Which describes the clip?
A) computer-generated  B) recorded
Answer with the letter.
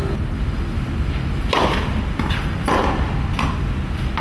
B